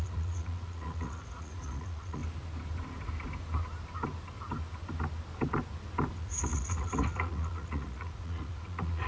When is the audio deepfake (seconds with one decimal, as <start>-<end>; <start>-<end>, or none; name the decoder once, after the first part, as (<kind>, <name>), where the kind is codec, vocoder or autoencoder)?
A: 0.0-2.2 (vocoder, Vocos); 6.2-9.1